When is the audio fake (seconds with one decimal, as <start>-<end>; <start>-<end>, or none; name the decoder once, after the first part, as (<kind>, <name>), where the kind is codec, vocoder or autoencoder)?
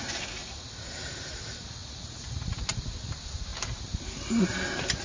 0.4-0.9 (vocoder, Vocos); 1.8-2.6